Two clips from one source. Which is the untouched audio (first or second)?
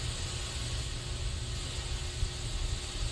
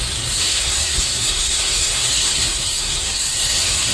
first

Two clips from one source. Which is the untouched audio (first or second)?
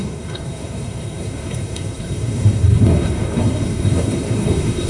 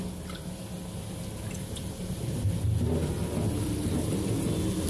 second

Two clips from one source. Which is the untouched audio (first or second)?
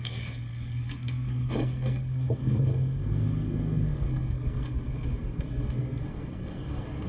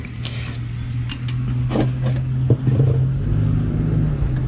second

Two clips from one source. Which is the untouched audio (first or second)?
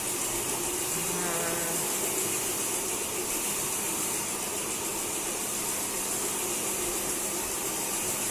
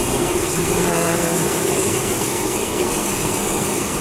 first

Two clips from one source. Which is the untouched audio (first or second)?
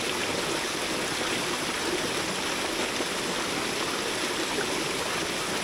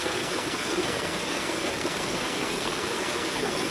first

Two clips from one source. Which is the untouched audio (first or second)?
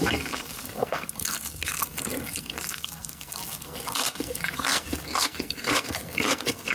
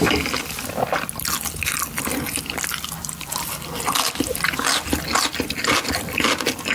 second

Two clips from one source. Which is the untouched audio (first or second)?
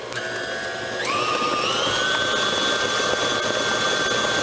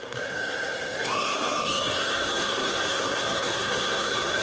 first